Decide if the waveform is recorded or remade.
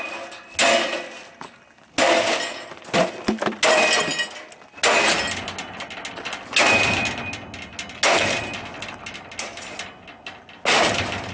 recorded